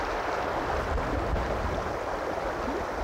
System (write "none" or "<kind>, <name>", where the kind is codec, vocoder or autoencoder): none